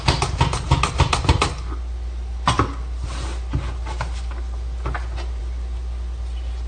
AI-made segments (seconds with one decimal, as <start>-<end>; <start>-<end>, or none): none